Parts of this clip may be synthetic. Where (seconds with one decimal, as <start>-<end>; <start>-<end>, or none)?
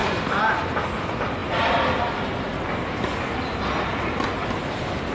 0.0-0.6